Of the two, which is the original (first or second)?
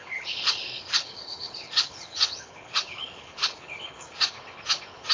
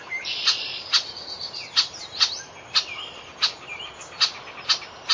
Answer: second